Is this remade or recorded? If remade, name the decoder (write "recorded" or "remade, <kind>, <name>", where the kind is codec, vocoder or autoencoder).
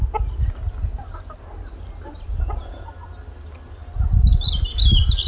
recorded